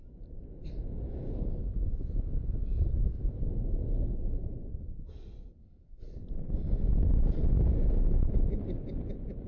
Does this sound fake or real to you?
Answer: real